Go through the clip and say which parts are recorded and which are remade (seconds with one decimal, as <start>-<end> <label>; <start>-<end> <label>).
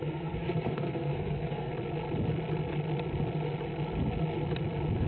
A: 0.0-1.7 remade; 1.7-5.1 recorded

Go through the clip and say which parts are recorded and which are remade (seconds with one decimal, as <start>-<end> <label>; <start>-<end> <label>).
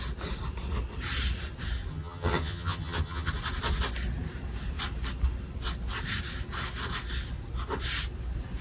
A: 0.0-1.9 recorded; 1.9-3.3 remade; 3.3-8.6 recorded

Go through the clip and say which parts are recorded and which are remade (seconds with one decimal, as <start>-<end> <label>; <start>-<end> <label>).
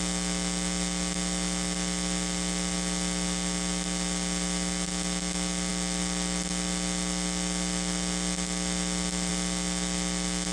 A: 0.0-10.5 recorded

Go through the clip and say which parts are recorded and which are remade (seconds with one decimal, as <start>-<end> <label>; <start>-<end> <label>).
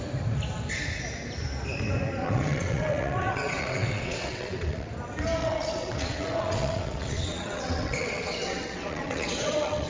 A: 0.0-2.2 recorded; 2.2-4.9 remade; 4.9-5.4 recorded; 5.4-9.9 remade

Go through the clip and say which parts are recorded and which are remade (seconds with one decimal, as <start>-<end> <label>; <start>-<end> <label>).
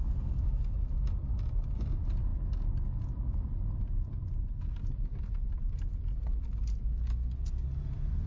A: 0.0-8.3 recorded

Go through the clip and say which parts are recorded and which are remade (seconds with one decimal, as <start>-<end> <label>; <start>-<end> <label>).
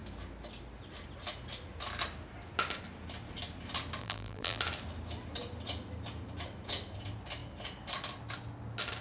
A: 0.0-4.0 recorded; 4.0-4.6 remade; 4.6-9.0 recorded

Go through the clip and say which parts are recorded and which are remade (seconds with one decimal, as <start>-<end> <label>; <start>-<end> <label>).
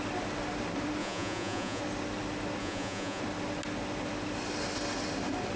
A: 0.0-1.0 recorded; 1.0-1.8 remade; 1.8-2.6 recorded; 2.6-3.2 remade; 3.2-5.6 recorded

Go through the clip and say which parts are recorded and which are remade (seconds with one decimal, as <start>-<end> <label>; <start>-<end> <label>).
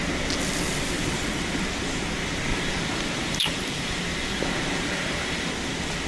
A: 0.0-2.5 recorded; 2.5-5.5 remade; 5.5-6.1 recorded